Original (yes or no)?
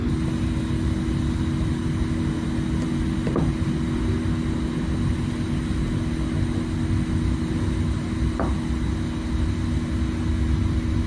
yes